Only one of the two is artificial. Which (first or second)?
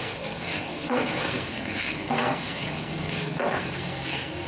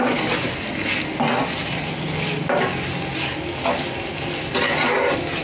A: first